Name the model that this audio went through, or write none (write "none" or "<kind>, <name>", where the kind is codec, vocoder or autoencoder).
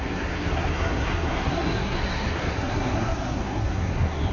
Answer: codec, SNAC